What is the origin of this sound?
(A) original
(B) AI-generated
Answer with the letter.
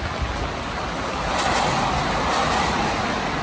A